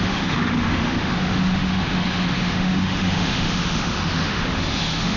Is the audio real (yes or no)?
no